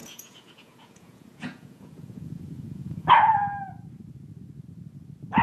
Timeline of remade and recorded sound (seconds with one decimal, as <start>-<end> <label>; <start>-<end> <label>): 0.0-3.1 remade; 3.1-5.4 recorded